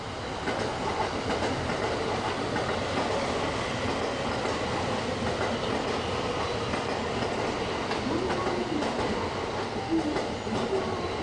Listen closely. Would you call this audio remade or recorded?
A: recorded